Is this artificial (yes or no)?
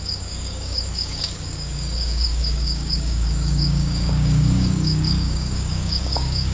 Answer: yes